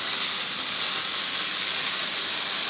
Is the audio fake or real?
real